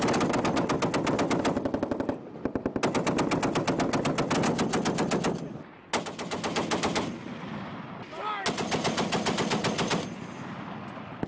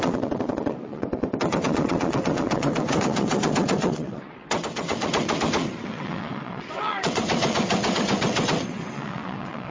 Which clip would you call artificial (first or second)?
second